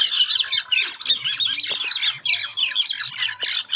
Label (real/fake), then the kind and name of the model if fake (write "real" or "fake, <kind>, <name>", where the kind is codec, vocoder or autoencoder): real